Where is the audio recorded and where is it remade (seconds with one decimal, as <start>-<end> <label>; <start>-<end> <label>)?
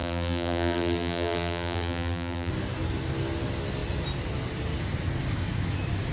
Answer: 0.0-2.5 remade; 2.5-6.1 recorded